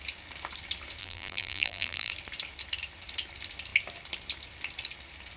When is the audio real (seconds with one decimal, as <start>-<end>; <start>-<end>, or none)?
0.0-1.0; 2.1-5.4